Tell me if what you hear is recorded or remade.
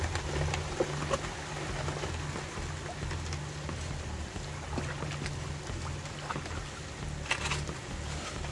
recorded